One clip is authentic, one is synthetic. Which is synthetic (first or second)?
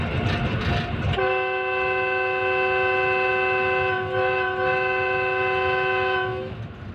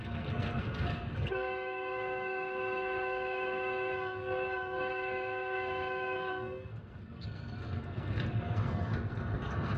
second